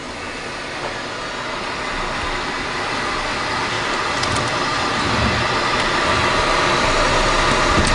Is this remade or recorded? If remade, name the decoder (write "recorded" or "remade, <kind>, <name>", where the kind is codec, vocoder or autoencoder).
recorded